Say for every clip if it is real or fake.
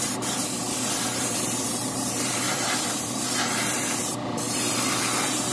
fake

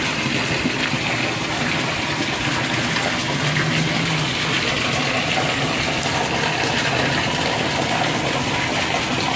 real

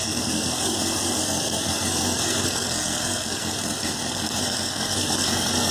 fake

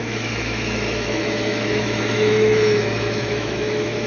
fake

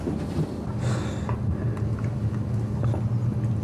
real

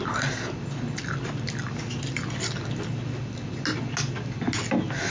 real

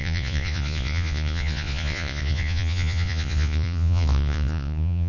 fake